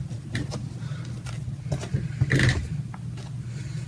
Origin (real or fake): real